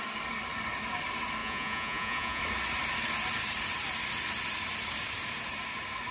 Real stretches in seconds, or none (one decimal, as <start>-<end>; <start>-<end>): 0.0-1.4; 2.4-6.1